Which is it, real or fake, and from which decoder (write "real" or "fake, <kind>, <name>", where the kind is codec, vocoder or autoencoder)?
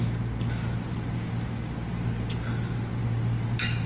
real